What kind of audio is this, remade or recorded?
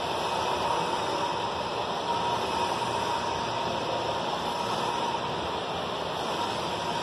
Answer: remade